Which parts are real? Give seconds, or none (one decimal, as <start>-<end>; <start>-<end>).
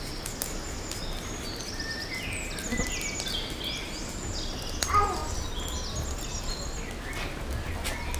0.0-8.2